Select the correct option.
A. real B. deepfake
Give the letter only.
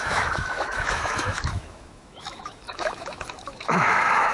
B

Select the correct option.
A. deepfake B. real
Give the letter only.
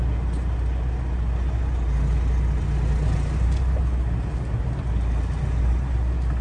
B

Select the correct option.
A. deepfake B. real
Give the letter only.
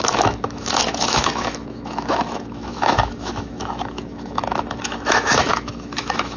A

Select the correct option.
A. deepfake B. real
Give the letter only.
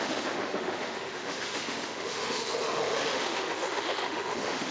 A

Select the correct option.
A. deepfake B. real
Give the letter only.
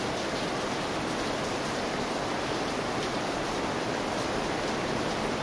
B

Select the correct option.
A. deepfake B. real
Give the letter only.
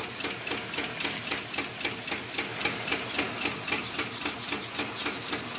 B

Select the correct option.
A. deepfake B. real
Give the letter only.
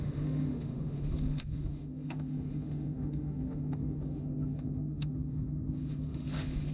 A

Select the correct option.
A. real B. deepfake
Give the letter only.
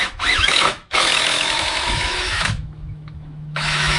B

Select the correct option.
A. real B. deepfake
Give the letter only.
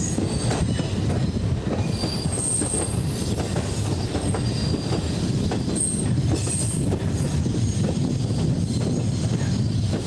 A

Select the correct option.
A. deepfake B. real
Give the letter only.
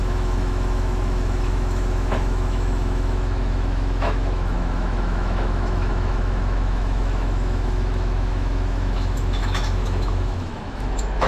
A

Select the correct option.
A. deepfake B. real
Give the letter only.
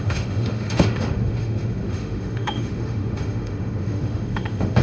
A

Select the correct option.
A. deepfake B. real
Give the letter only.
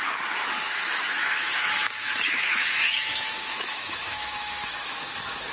A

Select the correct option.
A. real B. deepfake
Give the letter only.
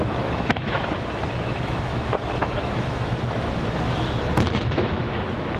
B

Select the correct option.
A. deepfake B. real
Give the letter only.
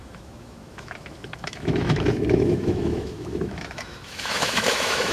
A